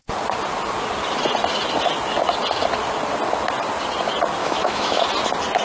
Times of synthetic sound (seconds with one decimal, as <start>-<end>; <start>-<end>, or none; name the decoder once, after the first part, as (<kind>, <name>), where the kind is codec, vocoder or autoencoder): 4.4-5.0 (autoencoder, DAC-VAE)